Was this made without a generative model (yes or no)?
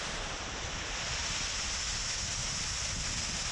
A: yes